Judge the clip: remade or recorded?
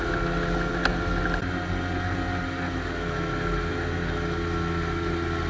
recorded